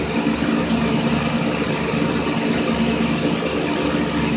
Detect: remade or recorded recorded